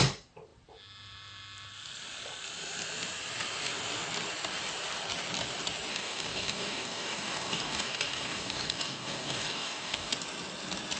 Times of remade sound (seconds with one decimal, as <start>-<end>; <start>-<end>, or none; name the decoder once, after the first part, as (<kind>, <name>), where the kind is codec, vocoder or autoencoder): 5.9-10.1 (codec, DAC)